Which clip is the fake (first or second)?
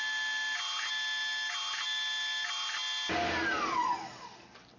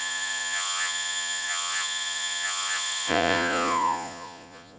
second